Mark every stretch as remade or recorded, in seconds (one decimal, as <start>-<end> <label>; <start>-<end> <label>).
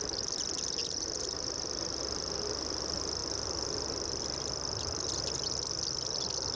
0.0-0.8 recorded; 0.8-2.0 remade; 2.0-6.5 recorded